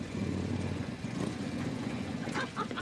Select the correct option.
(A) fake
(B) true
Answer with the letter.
A